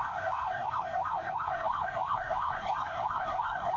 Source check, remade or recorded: remade